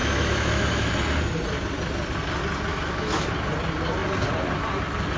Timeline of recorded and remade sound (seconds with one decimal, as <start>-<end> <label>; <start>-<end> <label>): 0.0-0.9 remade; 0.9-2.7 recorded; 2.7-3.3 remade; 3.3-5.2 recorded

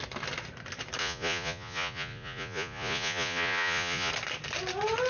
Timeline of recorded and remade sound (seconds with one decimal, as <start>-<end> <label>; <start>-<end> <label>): 0.0-1.0 recorded; 1.0-4.1 remade; 4.1-5.1 recorded

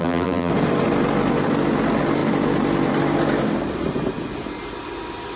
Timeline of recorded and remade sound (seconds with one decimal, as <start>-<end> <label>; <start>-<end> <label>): 0.0-0.5 remade; 0.5-5.4 recorded

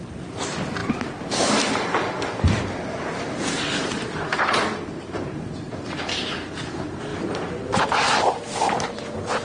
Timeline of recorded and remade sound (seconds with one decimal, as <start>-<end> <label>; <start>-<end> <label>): 0.0-9.4 recorded

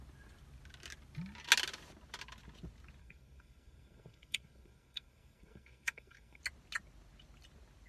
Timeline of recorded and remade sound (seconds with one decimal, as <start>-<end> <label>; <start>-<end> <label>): 0.0-3.0 recorded; 3.0-6.4 remade; 6.4-7.9 recorded